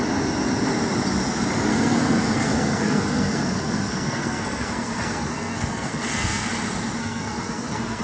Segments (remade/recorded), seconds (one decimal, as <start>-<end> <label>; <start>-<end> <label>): 0.0-1.7 recorded; 1.7-6.5 remade; 6.5-7.0 recorded; 7.0-8.0 remade